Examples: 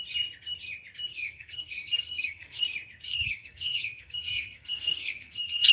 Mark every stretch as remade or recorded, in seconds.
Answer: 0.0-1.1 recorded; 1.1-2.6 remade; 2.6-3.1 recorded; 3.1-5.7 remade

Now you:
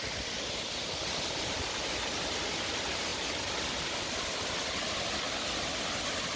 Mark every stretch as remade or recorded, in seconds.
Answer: 0.0-6.4 recorded

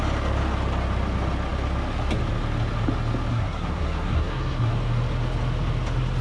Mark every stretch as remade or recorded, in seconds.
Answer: 0.0-3.3 recorded; 3.3-4.7 remade; 4.7-6.2 recorded

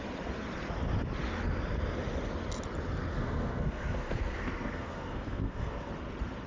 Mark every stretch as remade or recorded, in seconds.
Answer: 0.0-3.1 recorded; 3.1-5.9 remade; 5.9-6.5 recorded

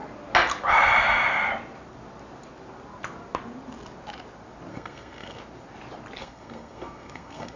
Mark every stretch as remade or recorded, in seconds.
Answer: 0.0-4.7 recorded; 4.7-5.4 remade; 5.4-6.2 recorded; 6.2-7.6 remade

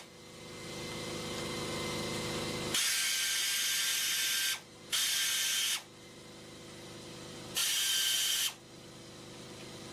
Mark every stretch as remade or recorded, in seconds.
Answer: 0.0-9.9 recorded

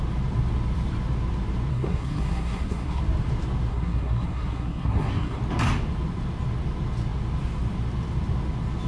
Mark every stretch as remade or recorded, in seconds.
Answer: 0.0-1.7 recorded; 1.7-3.0 remade; 3.0-3.7 recorded; 3.7-5.4 remade; 5.4-8.9 recorded